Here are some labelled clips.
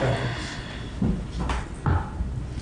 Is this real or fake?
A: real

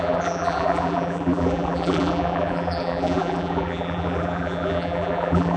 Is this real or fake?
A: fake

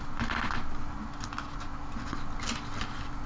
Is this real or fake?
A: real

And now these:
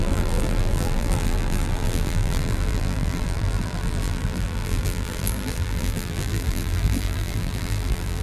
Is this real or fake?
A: fake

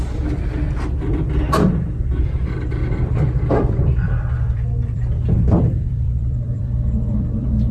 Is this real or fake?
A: fake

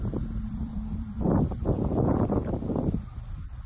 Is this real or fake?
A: fake